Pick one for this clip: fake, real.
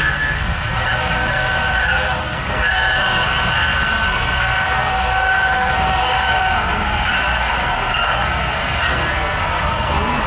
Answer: fake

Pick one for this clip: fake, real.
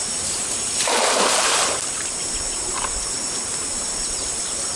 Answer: fake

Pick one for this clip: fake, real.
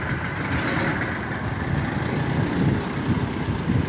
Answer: real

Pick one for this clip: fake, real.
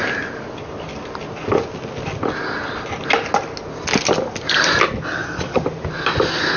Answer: real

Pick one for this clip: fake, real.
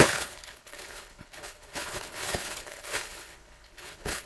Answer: fake